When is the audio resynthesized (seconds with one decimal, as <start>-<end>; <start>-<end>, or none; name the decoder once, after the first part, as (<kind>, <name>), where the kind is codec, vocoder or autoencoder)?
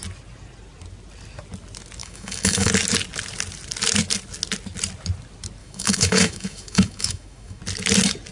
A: 2.0-2.7 (autoencoder, DAC-VAE); 5.6-7.6